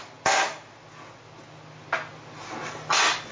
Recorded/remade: recorded